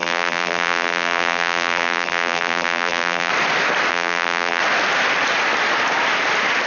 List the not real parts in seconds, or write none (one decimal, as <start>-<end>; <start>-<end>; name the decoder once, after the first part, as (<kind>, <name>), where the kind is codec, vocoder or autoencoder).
0.0-3.3 (vocoder, BigVGAN v2); 3.9-4.6

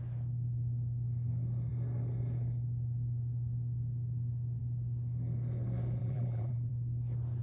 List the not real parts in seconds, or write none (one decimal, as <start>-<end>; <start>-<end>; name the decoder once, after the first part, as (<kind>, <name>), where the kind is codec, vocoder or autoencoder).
6.0-6.7 (vocoder, BigVGAN v2)

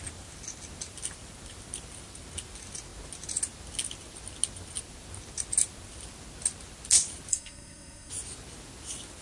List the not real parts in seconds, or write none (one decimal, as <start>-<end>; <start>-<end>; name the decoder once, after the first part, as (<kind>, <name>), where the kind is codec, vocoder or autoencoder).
7.3-8.1 (codec, SNAC)

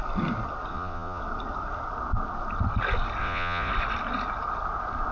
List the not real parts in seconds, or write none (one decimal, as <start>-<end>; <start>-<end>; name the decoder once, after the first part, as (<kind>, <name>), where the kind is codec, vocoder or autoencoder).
0.7-1.2 (vocoder, Vocos); 3.2-3.7